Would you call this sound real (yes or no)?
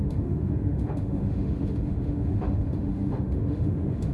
no